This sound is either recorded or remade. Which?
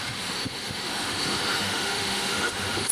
remade